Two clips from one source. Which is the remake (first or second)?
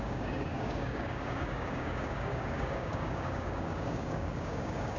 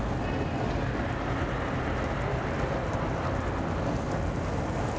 first